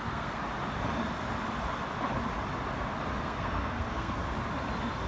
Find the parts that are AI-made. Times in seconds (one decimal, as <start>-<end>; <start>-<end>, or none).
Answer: 0.0-0.4; 3.2-4.2